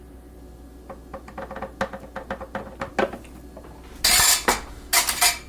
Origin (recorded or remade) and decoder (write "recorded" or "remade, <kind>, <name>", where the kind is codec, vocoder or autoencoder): recorded